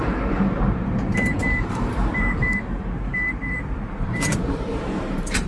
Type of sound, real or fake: fake